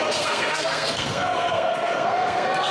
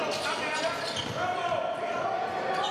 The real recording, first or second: second